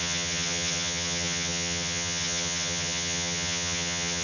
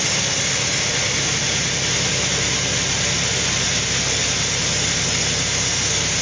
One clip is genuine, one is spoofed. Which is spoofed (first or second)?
first